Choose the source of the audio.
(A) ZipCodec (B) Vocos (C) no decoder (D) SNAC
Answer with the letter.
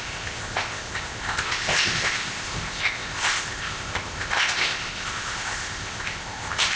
A